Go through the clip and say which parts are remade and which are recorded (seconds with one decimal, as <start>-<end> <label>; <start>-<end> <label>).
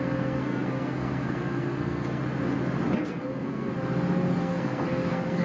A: 0.0-2.2 remade; 2.2-3.0 recorded; 3.0-3.7 remade; 3.7-4.4 recorded; 4.4-5.4 remade